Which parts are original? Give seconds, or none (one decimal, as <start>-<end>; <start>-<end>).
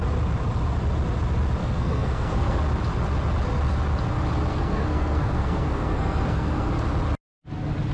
0.0-1.6; 2.6-4.5; 6.7-7.9